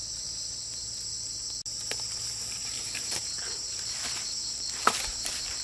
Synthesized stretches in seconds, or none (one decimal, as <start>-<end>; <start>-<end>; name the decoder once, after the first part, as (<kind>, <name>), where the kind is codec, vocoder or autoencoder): 2.6-5.6 (vocoder, BigVGAN v2)